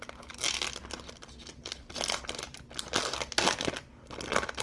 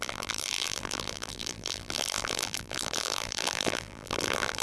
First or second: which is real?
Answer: first